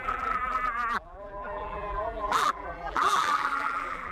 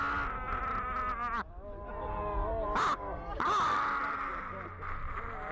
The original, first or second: second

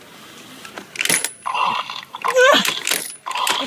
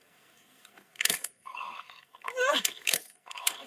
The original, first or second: first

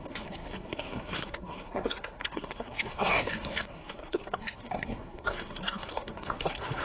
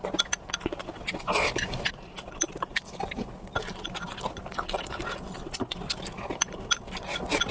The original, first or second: second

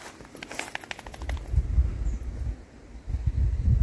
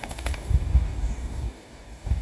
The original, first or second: first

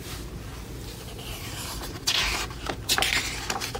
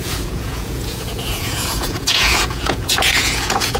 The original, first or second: first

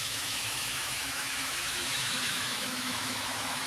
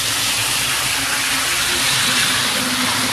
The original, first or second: second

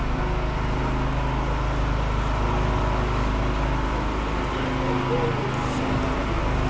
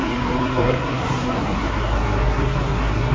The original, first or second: first